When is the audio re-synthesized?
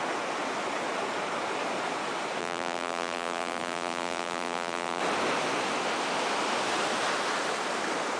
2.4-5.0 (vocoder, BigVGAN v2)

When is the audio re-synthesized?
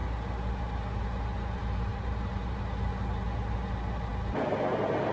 1.9-2.6 (vocoder, BigVGAN v2)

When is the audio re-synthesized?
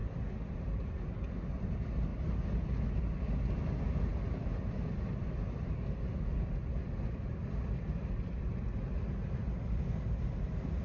0.0-2.1 (vocoder, BigVGAN v2); 2.9-10.8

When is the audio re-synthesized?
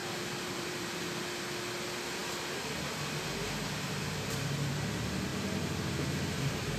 0.0-1.0 (vocoder, BigVGAN v2); 5.3-6.8